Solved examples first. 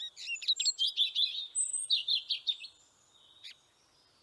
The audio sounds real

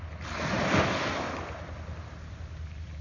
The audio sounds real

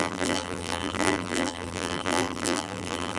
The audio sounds fake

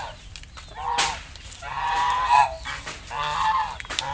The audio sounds real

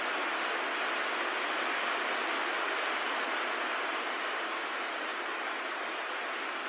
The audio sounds real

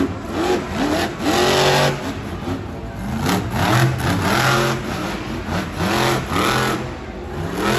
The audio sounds real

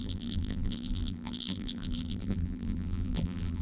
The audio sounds fake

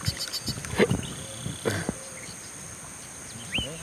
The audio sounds fake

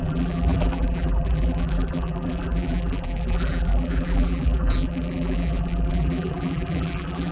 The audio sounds fake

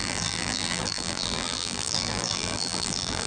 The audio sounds fake